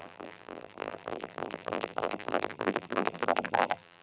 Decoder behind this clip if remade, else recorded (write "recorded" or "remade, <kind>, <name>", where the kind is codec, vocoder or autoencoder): remade, vocoder, BigVGAN v2